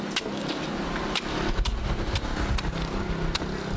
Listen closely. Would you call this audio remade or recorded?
recorded